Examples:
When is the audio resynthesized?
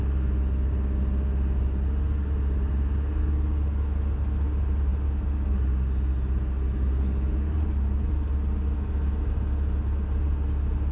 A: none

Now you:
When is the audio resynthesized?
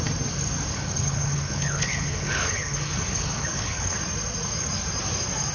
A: 0.7-4.0 (codec, HILCodec)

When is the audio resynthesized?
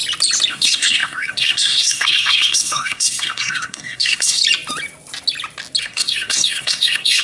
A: 0.5-4.4 (codec, SNAC); 5.8-7.2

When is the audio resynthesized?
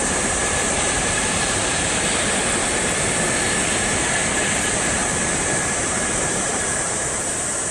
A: 0.0-2.4 (vocoder, BigVGAN v2); 3.8-7.7